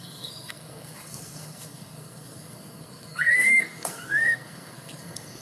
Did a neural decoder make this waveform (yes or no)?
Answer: yes